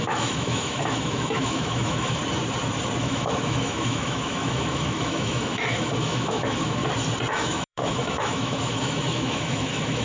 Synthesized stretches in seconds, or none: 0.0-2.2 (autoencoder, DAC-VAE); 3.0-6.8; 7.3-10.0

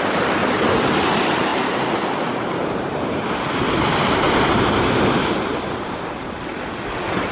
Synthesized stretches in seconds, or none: 0.0-0.4 (vocoder, BigVGAN v2); 1.0-6.5

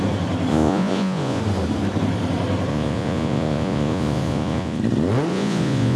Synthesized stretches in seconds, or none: 0.5-1.4 (vocoder, Vocos); 2.7-4.8; 5.3-6.0